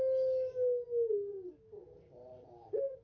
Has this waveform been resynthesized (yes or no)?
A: no